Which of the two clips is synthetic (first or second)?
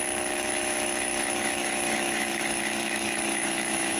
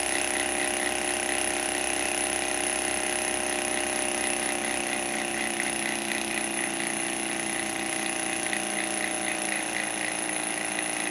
first